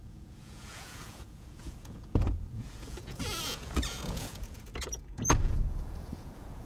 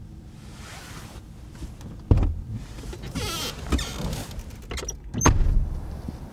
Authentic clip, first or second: second